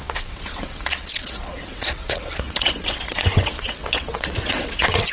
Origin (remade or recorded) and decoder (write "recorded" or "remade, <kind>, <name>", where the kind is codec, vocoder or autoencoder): remade, vocoder, WaveNeXt